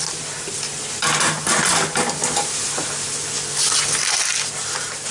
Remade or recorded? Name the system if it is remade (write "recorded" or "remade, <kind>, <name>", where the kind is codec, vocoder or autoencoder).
recorded